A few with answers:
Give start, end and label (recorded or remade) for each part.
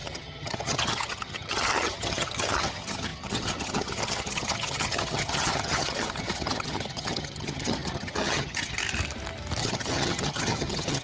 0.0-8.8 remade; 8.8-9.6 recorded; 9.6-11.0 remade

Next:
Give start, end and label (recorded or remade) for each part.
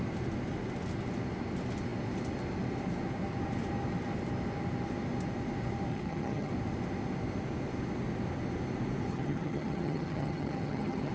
0.0-5.9 recorded; 5.9-6.5 remade; 6.5-9.1 recorded; 9.1-11.1 remade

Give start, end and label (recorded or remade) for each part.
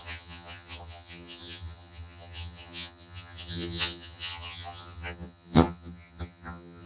0.0-6.9 remade